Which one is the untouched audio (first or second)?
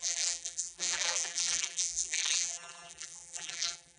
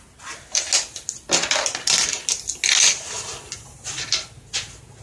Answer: second